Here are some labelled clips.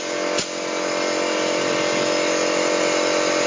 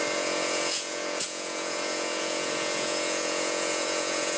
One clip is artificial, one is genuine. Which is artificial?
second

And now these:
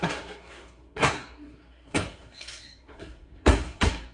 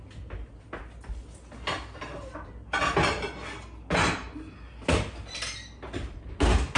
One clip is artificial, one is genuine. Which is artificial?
first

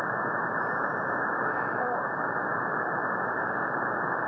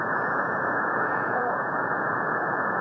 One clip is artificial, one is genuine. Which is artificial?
second